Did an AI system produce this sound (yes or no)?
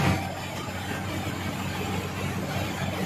no